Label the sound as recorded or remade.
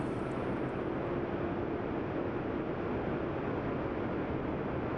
recorded